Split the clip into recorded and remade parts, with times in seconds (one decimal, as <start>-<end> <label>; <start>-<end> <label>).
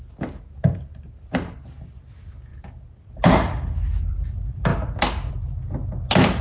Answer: 0.0-0.9 recorded; 0.9-1.5 remade; 1.5-6.4 recorded